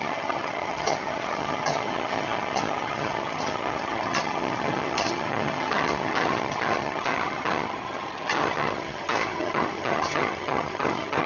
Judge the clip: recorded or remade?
remade